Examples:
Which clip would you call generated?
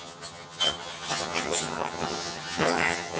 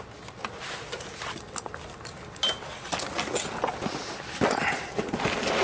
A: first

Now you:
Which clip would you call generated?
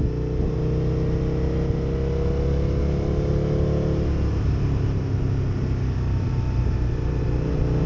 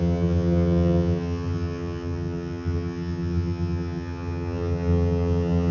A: second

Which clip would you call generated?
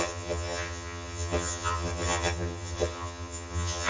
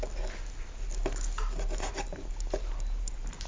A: first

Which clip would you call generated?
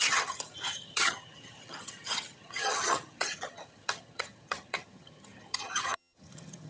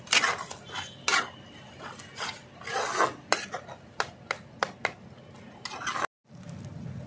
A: first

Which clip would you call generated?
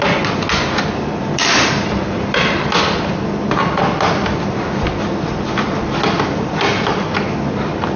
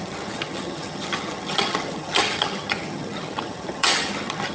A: second